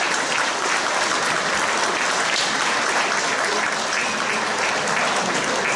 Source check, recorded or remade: recorded